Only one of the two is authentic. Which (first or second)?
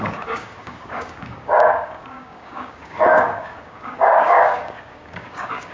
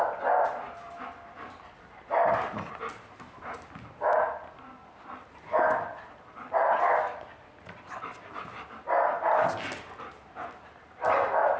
second